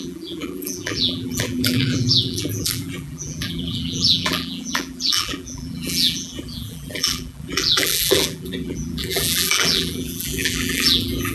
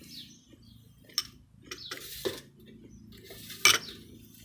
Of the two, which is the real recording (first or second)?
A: second